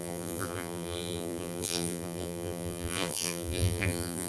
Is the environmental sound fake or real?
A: fake